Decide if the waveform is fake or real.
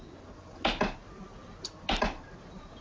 real